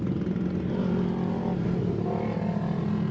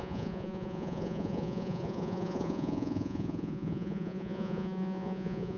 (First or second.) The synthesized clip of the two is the second